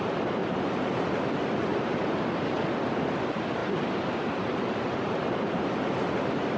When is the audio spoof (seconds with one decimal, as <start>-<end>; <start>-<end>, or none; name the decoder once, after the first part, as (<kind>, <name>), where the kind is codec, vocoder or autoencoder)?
0.4-1.0 (vocoder, BigVGAN v2); 1.7-2.7; 3.6-5.6